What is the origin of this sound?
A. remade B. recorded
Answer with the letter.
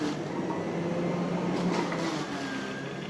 B